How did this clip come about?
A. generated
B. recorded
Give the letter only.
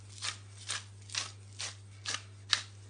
B